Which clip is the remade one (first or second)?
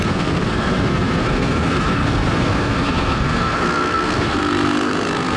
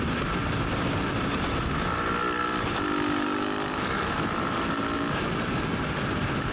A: first